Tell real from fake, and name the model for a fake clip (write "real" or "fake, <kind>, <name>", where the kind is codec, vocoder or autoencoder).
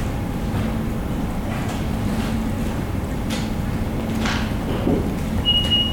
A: real